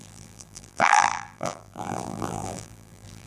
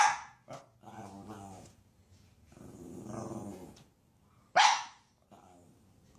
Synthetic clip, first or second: first